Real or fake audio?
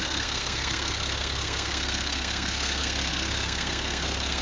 fake